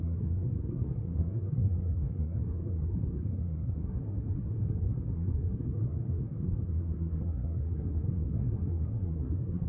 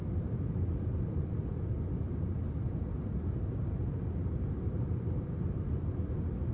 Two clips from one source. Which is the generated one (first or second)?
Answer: first